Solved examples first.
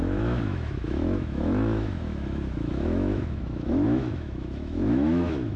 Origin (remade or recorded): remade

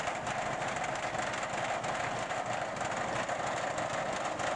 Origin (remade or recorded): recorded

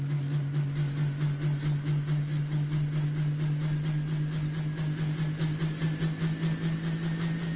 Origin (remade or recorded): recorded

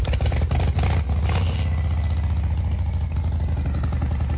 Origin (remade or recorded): recorded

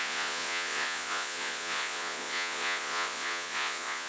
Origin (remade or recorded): remade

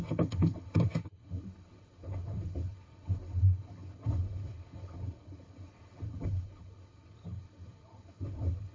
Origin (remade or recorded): remade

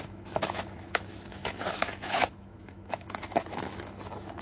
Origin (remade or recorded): remade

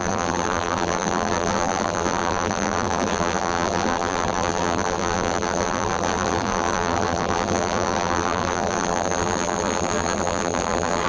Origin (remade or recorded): remade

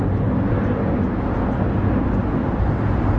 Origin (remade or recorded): recorded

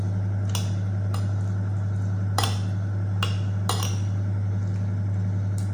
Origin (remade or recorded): recorded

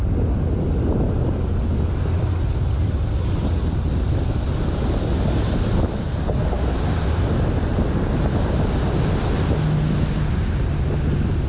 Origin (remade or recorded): recorded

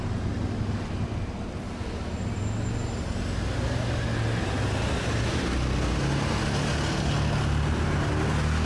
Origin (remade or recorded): recorded